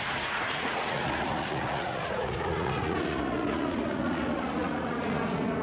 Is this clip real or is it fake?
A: fake